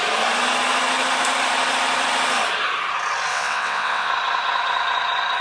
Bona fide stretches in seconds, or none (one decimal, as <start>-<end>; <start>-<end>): 0.0-3.3; 4.1-5.4